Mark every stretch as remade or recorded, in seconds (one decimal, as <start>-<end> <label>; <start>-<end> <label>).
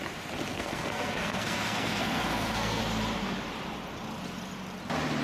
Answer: 0.0-0.5 recorded; 0.5-2.8 remade; 2.8-5.2 recorded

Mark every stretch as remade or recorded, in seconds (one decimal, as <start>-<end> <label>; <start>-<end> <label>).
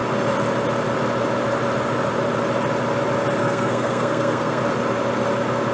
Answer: 0.0-3.4 recorded; 3.4-4.6 remade; 4.6-5.7 recorded